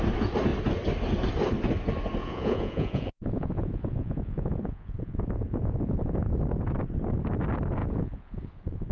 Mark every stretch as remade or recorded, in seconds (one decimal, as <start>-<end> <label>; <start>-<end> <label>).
0.0-2.2 recorded; 2.2-6.3 remade; 6.3-7.8 recorded; 7.8-8.9 remade